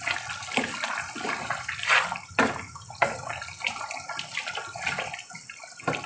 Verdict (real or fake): real